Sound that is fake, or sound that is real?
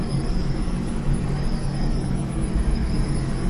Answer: fake